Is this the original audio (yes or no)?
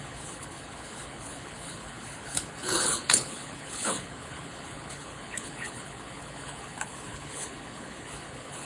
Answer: no